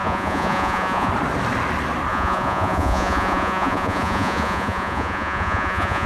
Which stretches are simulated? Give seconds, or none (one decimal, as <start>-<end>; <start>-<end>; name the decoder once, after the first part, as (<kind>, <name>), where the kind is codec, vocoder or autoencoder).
0.0-1.1 (vocoder, Vocos); 2.1-6.1